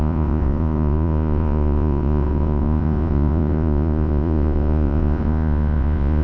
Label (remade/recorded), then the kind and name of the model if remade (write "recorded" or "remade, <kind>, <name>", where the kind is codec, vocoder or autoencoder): remade, vocoder, Vocos